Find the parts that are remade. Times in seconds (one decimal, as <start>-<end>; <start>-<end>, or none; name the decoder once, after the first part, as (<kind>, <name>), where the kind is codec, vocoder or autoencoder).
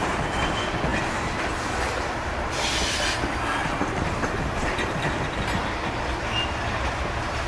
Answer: 0.9-2.5 (vocoder, BigVGAN v2); 3.6-6.0